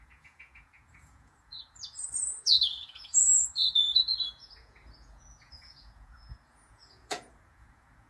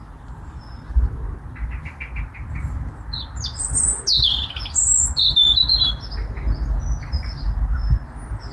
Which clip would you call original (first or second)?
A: second